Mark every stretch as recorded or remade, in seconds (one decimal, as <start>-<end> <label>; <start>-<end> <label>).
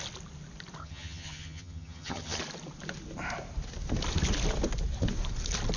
0.0-0.8 recorded; 0.8-2.4 remade; 2.4-5.8 recorded